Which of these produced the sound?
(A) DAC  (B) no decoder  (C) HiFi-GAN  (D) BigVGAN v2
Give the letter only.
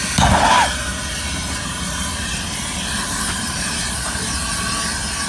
B